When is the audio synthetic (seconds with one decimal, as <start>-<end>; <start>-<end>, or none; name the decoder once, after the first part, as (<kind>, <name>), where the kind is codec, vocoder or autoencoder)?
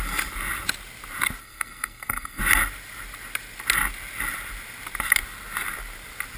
1.4-2.4 (codec, SNAC)